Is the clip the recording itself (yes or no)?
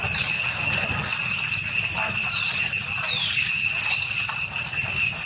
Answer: yes